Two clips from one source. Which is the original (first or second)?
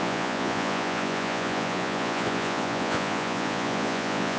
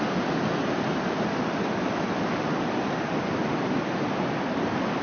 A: second